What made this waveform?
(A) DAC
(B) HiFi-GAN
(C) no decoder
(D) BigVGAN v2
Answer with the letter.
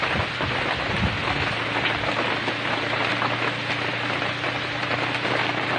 C